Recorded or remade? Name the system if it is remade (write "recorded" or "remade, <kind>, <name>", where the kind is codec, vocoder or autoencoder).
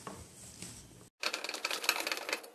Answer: recorded